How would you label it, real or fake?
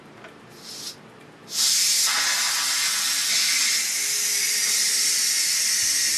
real